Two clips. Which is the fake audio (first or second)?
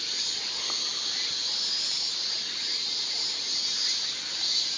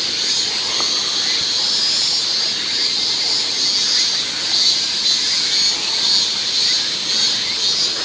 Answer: first